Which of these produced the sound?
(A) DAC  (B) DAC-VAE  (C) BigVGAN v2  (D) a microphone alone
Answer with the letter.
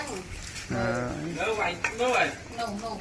D